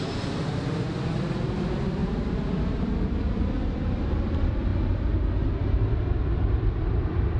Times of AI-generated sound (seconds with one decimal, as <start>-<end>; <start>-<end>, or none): 2.0-2.9